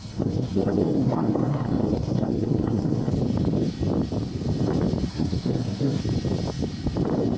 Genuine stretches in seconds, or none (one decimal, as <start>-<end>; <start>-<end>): 3.1-5.1; 6.0-7.4